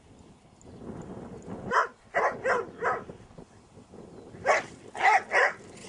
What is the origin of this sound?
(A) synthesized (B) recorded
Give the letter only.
B